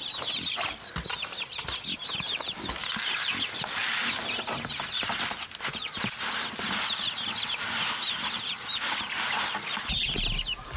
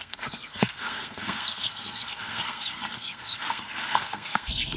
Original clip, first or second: first